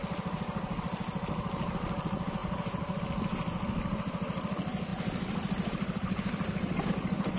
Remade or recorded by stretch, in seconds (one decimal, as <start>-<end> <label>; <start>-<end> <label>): 0.0-2.4 recorded; 2.4-3.0 remade; 3.0-7.4 recorded